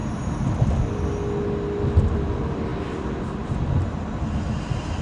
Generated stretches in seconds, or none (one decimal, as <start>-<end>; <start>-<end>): none